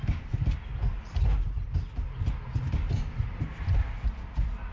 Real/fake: real